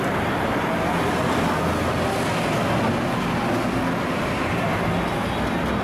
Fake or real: real